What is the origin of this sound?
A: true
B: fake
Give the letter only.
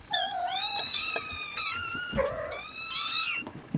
B